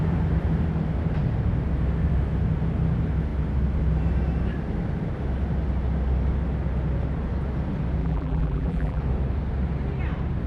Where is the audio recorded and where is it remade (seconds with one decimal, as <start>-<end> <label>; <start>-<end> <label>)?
0.0-8.0 recorded; 8.0-9.0 remade; 9.0-10.5 recorded